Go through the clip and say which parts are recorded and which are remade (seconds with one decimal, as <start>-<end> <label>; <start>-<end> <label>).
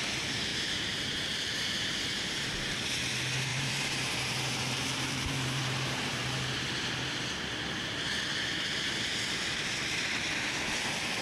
0.0-0.5 recorded; 0.5-2.7 remade; 2.7-3.5 recorded; 3.5-6.7 remade; 6.7-11.2 recorded